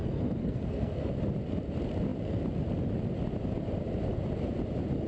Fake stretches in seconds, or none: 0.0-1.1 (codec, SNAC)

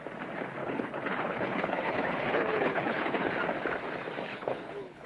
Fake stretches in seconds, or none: 0.6-3.3 (codec, HILCodec); 4.3-5.1

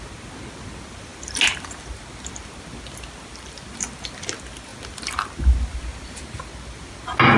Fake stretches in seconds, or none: none